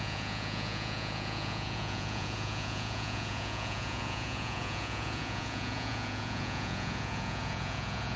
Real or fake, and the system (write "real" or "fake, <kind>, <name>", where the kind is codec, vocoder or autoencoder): fake, vocoder, Vocos